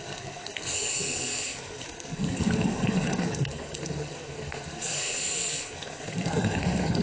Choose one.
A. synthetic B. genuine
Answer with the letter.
A